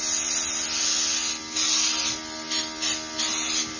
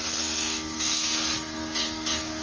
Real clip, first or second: first